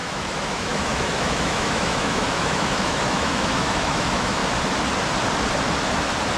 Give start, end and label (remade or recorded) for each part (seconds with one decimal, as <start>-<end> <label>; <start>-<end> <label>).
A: 0.0-4.4 remade; 4.4-6.4 recorded